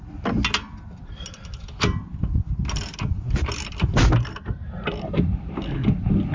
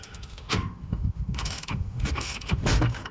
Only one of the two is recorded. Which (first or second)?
first